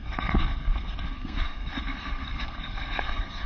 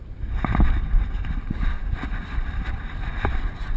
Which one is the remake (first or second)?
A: first